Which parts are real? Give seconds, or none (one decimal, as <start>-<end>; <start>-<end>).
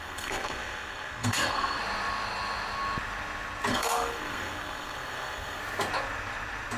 1.8-3.7; 5.6-6.8